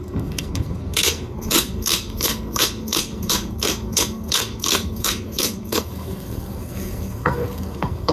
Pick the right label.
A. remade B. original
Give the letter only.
A